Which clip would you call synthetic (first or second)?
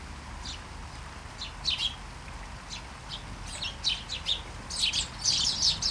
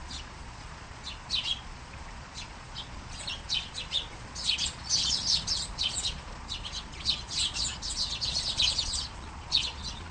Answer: second